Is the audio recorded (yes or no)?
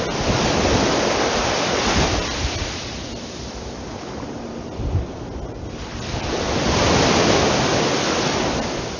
yes